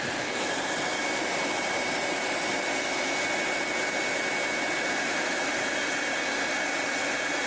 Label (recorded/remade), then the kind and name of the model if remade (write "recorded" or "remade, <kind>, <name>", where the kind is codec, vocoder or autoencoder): recorded